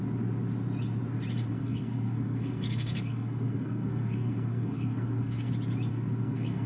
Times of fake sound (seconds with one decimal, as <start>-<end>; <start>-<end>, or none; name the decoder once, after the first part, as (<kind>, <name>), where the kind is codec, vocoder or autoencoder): 1.5-5.5 (codec, SNAC); 5.9-6.7